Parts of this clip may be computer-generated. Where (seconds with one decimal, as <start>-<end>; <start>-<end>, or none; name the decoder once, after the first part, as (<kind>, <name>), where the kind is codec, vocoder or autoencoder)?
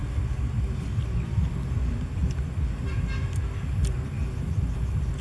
none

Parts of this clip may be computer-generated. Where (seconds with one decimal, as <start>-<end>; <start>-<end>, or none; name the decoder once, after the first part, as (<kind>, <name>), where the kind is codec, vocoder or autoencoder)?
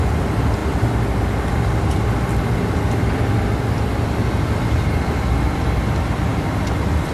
none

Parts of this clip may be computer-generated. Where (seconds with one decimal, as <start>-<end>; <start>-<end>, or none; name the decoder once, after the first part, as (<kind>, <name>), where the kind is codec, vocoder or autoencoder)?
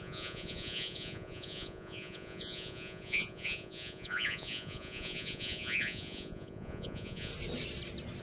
0.0-7.3 (vocoder, Vocos)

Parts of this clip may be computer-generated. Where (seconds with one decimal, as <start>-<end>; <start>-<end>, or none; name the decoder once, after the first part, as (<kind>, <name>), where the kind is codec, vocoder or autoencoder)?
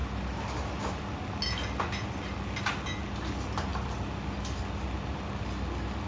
none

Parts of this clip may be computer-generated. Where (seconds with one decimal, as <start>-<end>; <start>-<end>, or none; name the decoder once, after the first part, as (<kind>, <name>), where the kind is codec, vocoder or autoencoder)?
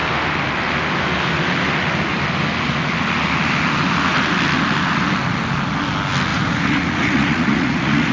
6.3-8.1 (vocoder, Vocos)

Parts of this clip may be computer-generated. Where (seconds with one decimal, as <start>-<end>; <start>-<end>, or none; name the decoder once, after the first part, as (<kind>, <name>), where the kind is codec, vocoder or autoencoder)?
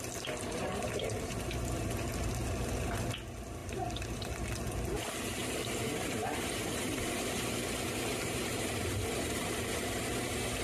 none